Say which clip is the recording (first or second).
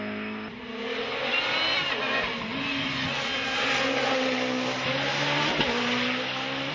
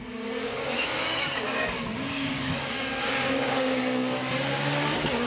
first